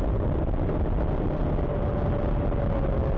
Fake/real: real